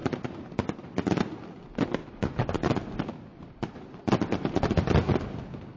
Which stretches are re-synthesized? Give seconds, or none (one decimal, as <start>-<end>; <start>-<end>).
0.0-1.1